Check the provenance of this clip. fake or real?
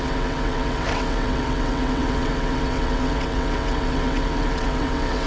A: fake